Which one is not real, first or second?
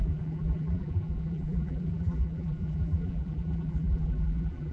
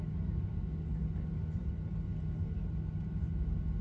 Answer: first